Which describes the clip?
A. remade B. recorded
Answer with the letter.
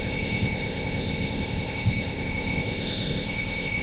A